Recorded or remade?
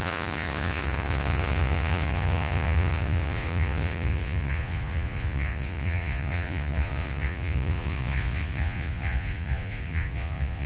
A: remade